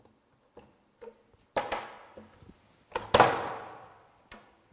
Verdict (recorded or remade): recorded